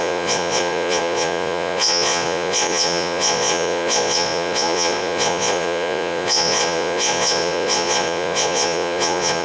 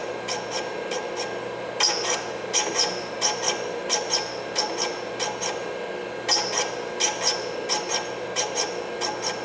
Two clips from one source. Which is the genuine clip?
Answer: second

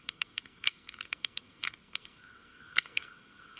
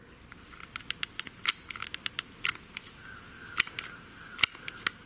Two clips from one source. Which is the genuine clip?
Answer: second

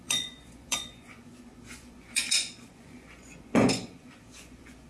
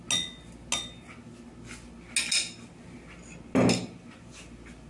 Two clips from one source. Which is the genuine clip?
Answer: second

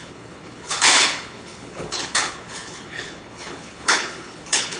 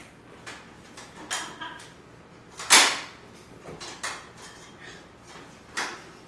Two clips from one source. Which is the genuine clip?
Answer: second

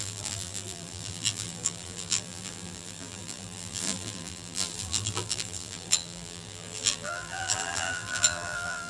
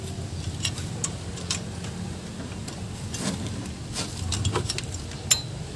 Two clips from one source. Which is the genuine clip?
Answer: second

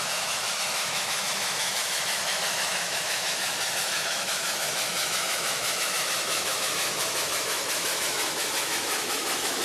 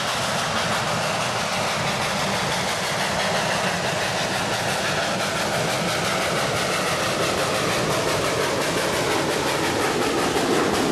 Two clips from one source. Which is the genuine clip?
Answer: second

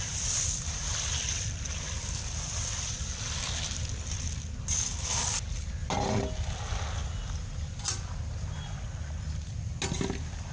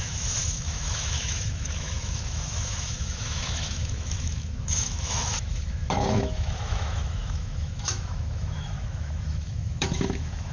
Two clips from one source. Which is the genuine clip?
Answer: first